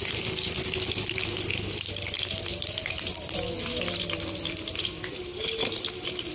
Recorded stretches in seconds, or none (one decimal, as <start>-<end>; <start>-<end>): 0.0-6.3